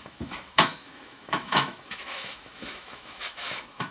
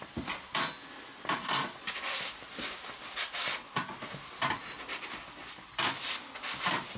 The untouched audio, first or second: second